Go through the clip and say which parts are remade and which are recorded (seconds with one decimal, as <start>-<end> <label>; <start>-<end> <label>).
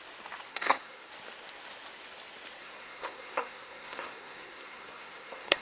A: 0.0-0.5 recorded; 0.5-1.1 remade; 1.1-2.6 recorded; 2.6-5.6 remade